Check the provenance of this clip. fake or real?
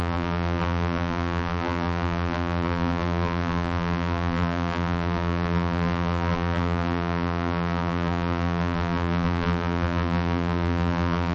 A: fake